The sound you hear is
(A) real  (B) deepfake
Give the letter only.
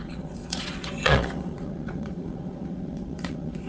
B